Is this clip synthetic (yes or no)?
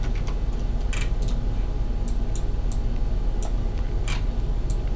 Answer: no